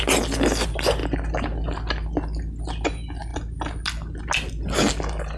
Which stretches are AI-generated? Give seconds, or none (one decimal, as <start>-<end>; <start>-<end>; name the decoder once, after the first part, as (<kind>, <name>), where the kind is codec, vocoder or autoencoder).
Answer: none